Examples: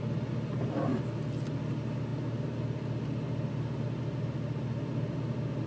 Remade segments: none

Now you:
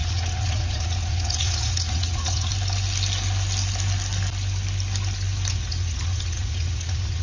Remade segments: 0.0-2.5 (vocoder, Vocos); 5.5-7.2

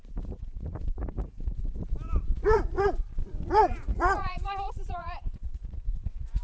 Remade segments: 0.0-1.8 (vocoder, Vocos); 3.6-6.4